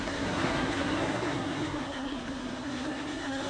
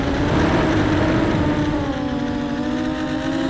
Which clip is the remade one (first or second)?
first